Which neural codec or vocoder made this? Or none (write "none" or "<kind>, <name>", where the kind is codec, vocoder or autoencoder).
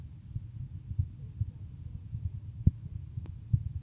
none